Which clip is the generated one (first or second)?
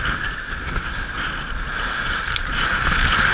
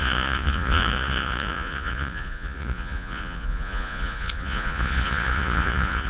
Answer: second